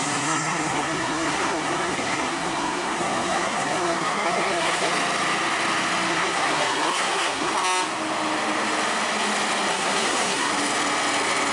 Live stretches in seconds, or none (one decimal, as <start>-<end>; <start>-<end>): 4.9-6.1; 7.5-9.7; 10.5-11.5